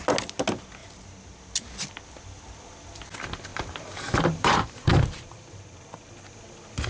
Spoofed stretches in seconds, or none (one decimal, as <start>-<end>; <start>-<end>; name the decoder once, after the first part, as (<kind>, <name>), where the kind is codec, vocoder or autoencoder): 3.5-5.6 (vocoder, BigVGAN v2)